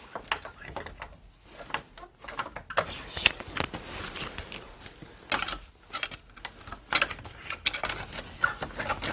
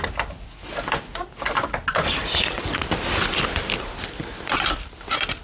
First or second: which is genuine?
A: first